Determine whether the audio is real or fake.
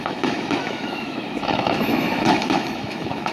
fake